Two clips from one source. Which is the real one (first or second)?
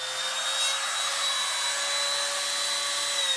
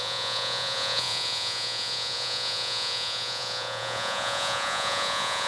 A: first